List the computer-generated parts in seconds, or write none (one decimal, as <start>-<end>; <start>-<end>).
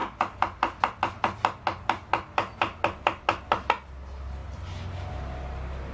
none